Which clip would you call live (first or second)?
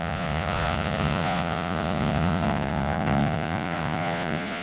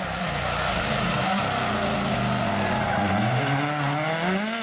second